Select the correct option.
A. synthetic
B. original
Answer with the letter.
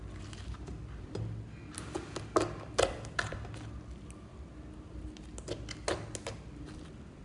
B